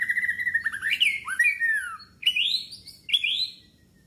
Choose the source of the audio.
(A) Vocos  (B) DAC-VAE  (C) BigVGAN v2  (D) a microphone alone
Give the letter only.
D